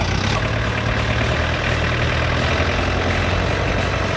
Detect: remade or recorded recorded